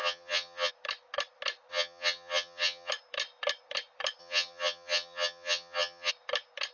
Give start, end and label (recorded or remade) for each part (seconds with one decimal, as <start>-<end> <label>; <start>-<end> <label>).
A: 0.0-0.7 remade; 0.7-1.7 recorded; 1.7-2.9 remade; 2.9-4.2 recorded; 4.2-6.1 remade; 6.1-6.7 recorded